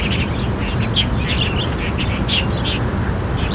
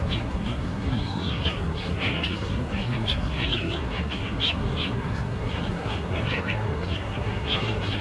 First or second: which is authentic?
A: first